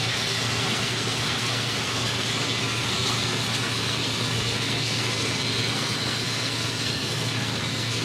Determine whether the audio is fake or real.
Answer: fake